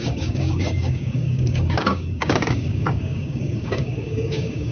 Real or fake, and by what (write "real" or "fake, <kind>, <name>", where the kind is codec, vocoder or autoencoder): fake, codec, DAC